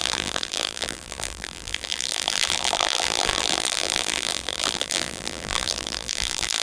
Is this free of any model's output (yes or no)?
no